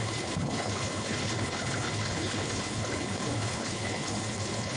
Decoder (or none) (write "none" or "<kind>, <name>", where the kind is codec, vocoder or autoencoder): codec, HILCodec